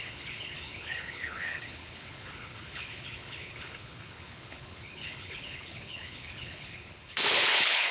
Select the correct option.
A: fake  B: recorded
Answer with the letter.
A